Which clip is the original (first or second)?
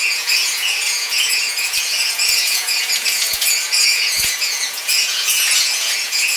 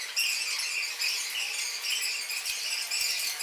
second